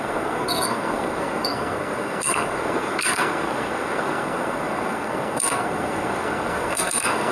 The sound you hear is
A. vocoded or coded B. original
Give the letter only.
A